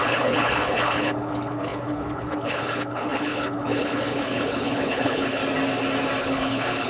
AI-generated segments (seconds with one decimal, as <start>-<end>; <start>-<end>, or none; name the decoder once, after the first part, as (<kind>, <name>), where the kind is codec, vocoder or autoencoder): 0.0-5.4 (codec, HILCodec); 6.2-6.9